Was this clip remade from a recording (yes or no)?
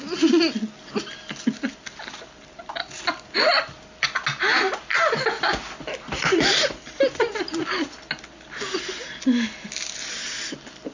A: no